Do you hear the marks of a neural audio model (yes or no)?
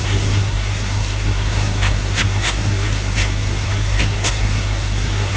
yes